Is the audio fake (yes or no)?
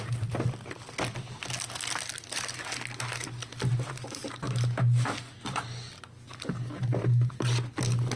no